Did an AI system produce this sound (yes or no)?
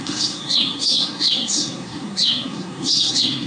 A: yes